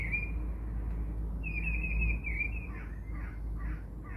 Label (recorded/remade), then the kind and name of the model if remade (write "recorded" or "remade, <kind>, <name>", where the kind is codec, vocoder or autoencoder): recorded